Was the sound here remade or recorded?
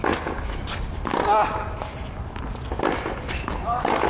recorded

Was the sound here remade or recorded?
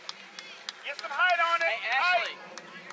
recorded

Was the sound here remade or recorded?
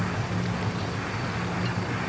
recorded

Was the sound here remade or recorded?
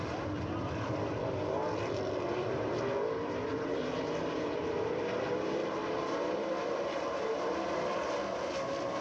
remade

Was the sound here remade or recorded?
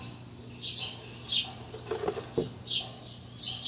recorded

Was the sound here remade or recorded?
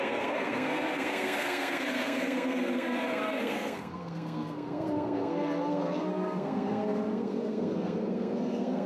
remade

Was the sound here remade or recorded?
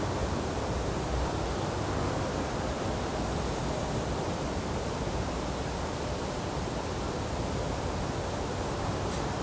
recorded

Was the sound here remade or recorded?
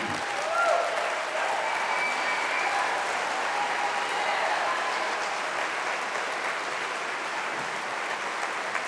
recorded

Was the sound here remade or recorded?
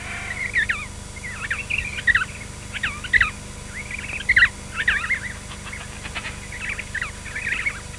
recorded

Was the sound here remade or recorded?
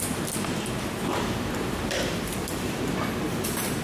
remade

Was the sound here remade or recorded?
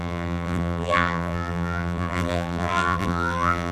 remade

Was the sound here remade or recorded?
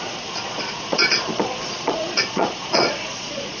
remade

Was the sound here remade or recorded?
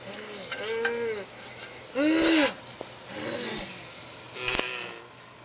recorded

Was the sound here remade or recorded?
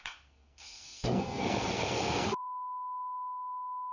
remade